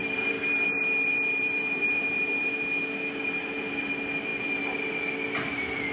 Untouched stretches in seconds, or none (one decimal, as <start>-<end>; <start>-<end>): 2.5-5.9